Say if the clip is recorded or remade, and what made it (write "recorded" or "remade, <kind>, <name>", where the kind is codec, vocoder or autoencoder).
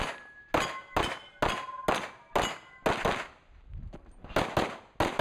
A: recorded